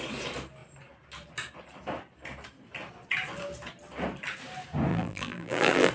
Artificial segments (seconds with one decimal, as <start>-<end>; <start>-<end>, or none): 4.9-5.9